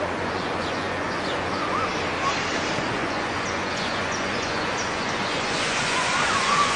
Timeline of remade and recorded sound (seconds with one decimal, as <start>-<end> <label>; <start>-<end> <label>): 0.0-1.9 remade; 1.9-2.8 recorded; 2.8-6.8 remade

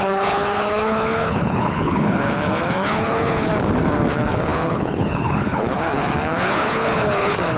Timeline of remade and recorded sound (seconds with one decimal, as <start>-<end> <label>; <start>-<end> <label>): 0.0-3.5 remade; 3.5-4.1 recorded; 4.1-7.6 remade

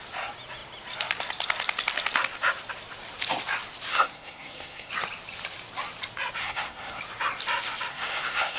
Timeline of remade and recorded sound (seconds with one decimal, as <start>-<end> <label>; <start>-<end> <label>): 0.0-3.9 recorded; 3.9-4.9 remade; 4.9-6.4 recorded; 6.4-7.0 remade; 7.0-7.9 recorded; 7.9-8.6 remade